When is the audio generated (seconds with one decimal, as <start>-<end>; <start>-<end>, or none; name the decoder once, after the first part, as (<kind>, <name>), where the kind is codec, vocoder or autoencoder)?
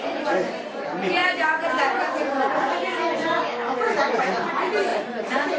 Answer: 3.5-4.5 (vocoder, BigVGAN v2); 4.9-5.6